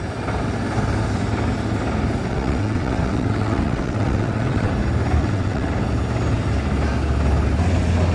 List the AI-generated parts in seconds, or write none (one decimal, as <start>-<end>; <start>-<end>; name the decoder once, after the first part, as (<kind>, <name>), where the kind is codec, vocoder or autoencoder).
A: 2.3-4.7 (vocoder, WaveNeXt); 5.2-5.7